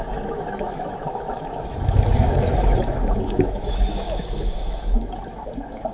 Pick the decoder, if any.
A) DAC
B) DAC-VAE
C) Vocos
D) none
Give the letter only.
B